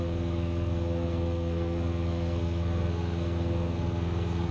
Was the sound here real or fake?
fake